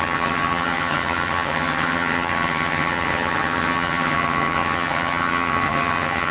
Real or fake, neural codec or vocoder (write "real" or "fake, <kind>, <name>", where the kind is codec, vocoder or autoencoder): fake, vocoder, HiFi-GAN